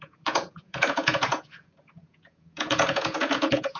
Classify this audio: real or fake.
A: fake